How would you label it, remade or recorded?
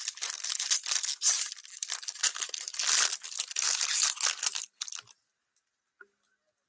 recorded